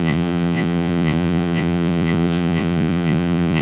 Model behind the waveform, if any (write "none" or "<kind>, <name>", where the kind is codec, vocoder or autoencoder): vocoder, Vocos